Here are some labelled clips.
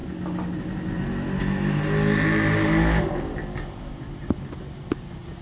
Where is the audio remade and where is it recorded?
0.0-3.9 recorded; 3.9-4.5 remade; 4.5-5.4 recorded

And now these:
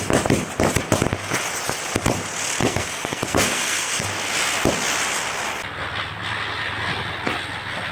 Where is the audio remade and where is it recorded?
0.0-2.6 recorded; 2.6-4.0 remade; 4.0-7.9 recorded

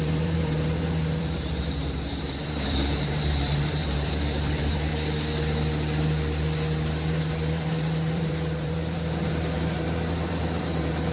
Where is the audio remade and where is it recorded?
0.0-4.9 remade; 4.9-7.1 recorded; 7.1-11.1 remade

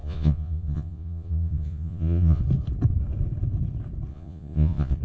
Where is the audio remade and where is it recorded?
0.0-2.4 remade; 2.4-4.1 recorded; 4.1-5.0 remade

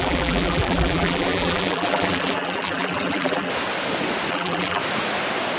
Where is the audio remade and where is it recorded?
0.0-3.5 remade; 3.5-4.3 recorded; 4.3-4.8 remade; 4.8-5.6 recorded

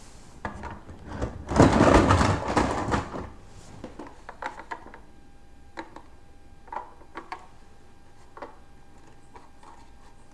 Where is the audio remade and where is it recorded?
0.0-10.3 recorded

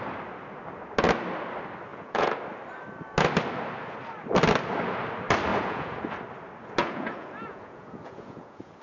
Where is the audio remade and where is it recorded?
0.0-1.9 recorded; 1.9-2.4 remade; 2.4-5.5 recorded; 5.5-6.0 remade; 6.0-6.8 recorded; 6.8-8.8 remade

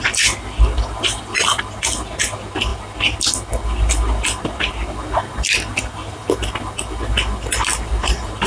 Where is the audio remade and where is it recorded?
0.0-7.7 recorded; 7.7-8.5 remade